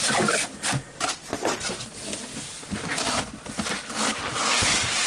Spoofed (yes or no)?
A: no